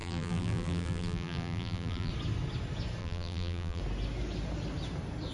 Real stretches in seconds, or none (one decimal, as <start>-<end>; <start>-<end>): 2.1-3.0; 3.8-5.3